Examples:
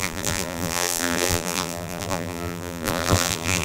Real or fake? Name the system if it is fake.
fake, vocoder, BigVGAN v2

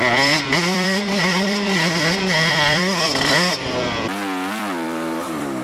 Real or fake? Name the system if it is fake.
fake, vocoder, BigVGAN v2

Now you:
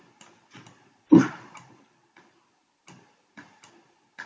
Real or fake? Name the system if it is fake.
real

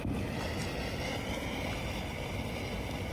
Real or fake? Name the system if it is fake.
real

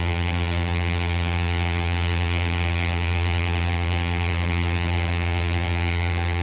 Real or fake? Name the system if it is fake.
fake, vocoder, BigVGAN v2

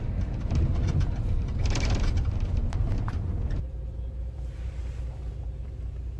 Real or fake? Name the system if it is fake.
fake, vocoder, BigVGAN v2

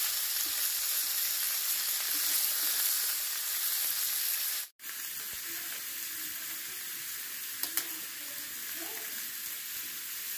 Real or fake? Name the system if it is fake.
real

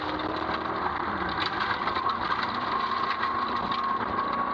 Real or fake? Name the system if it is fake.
fake, vocoder, BigVGAN v2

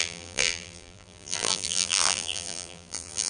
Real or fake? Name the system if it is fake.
fake, vocoder, BigVGAN v2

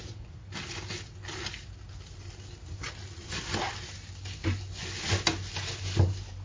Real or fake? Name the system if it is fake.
real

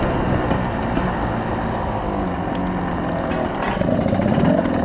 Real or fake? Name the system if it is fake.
real